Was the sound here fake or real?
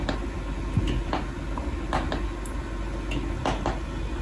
real